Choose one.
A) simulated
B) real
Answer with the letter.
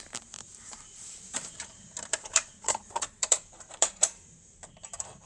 A